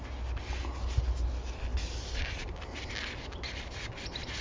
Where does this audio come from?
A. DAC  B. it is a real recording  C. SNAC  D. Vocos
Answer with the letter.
B